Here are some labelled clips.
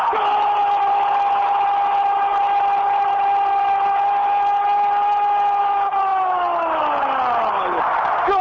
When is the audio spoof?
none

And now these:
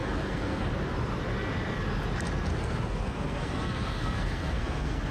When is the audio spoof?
0.0-0.7 (codec, SNAC); 2.5-5.1

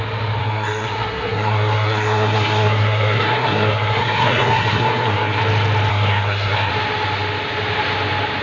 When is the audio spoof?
0.4-5.4 (codec, SNAC); 5.9-6.7

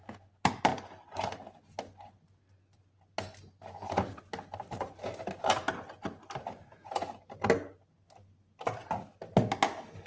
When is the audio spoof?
none